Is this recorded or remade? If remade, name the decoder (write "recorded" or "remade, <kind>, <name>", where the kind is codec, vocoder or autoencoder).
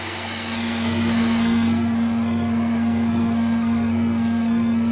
remade, codec, SNAC